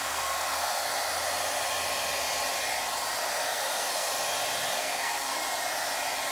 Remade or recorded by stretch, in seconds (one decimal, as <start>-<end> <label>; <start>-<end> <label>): 0.0-0.9 remade; 0.9-3.3 recorded; 3.3-4.1 remade; 4.1-4.8 recorded; 4.8-5.4 remade; 5.4-6.3 recorded

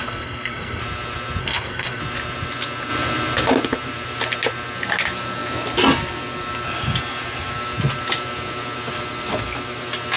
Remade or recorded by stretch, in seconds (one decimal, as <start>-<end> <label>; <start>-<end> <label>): 0.0-0.8 remade; 0.8-1.4 recorded; 1.4-2.0 remade; 2.0-10.2 recorded

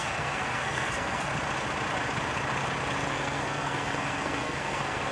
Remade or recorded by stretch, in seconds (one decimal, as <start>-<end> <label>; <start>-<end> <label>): 0.0-1.3 remade; 1.3-3.1 recorded; 3.1-5.1 remade

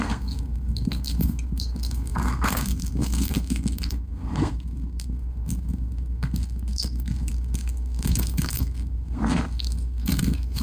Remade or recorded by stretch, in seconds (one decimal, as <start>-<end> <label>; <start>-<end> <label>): 0.0-10.6 remade